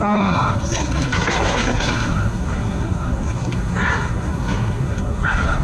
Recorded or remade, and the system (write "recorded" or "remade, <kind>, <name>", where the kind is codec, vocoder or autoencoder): remade, codec, SNAC